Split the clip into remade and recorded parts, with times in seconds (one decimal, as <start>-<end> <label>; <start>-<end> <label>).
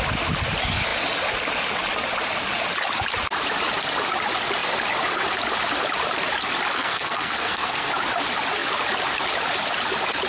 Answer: 0.0-6.7 recorded; 6.7-7.9 remade; 7.9-10.3 recorded